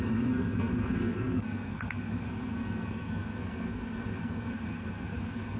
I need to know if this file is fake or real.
fake